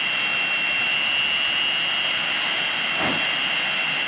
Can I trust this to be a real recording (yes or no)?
yes